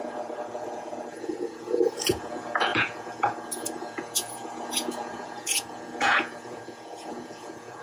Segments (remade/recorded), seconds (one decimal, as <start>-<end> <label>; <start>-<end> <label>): 0.0-7.8 remade